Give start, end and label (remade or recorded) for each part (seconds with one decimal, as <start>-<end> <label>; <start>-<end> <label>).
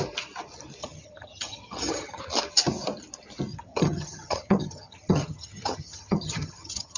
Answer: 0.0-0.8 recorded; 0.8-2.2 remade; 2.2-3.5 recorded; 3.5-7.0 remade